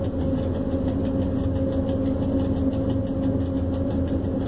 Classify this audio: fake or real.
real